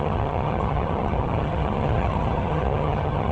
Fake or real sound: fake